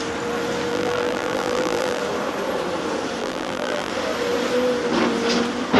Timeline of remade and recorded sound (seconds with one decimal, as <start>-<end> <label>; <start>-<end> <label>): 0.0-0.7 recorded; 0.7-2.0 remade; 2.0-3.2 recorded; 3.2-3.9 remade; 3.9-5.8 recorded